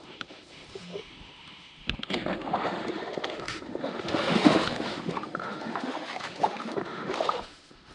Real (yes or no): no